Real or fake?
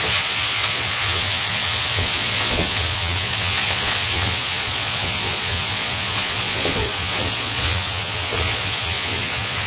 fake